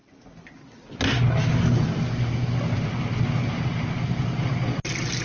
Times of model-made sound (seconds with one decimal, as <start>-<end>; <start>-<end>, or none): none